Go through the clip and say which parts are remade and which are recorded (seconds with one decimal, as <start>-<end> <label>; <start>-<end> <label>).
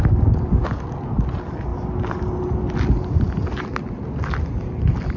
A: 0.0-5.2 recorded